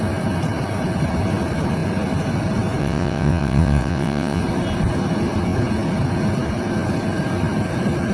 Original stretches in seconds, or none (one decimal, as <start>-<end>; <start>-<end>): 0.0-2.8; 4.4-8.1